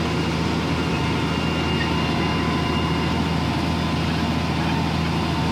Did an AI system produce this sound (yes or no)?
no